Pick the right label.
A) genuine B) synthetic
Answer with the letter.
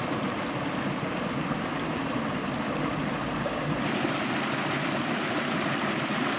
A